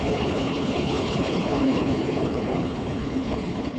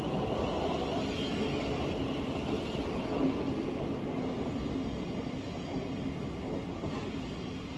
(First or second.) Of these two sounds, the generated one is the first